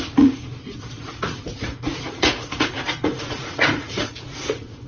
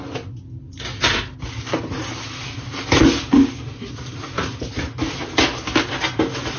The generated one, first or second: first